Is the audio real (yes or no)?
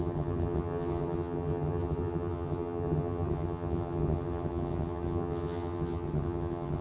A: no